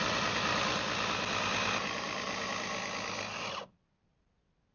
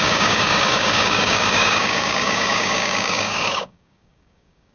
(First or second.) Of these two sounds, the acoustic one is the first